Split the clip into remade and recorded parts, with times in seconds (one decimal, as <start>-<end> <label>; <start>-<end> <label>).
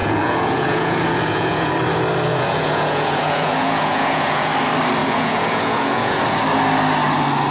0.0-1.7 remade; 1.7-2.3 recorded; 2.3-4.5 remade; 4.5-5.0 recorded; 5.0-6.2 remade; 6.2-7.5 recorded